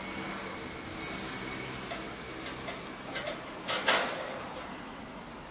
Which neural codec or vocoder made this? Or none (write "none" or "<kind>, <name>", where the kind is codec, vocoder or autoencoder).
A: none